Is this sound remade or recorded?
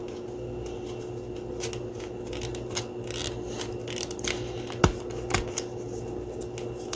recorded